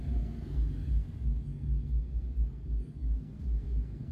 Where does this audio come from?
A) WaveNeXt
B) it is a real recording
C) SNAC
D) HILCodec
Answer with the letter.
C